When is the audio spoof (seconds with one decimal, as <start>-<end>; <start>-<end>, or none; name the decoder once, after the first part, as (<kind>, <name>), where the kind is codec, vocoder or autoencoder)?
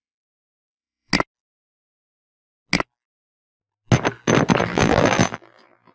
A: 0.0-1.1 (vocoder, BigVGAN v2); 4.6-5.9